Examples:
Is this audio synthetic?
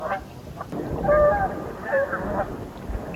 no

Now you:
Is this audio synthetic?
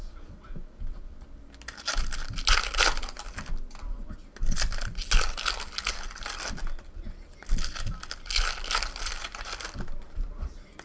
no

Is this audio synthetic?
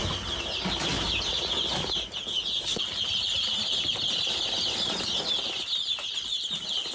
no